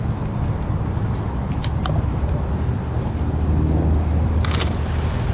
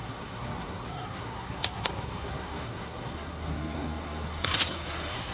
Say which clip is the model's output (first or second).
second